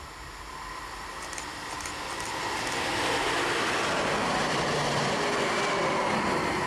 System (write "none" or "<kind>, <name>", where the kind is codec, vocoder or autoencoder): none